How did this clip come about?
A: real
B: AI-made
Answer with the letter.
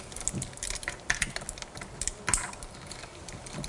A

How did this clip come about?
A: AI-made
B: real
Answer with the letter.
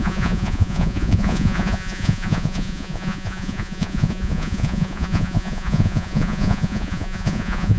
A